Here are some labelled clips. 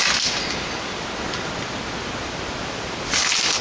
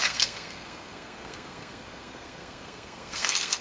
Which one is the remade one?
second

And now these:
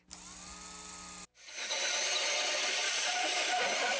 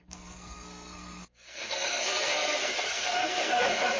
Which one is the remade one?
second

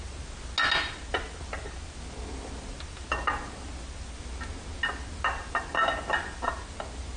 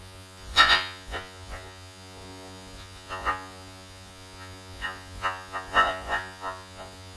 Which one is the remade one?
second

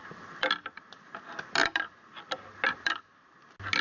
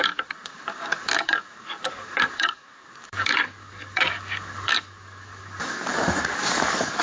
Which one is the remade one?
second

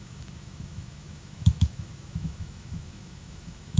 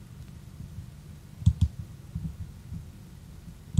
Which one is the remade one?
first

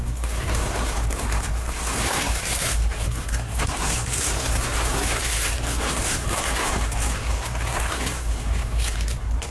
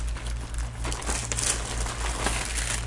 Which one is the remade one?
first